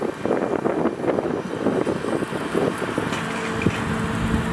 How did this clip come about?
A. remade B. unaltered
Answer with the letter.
B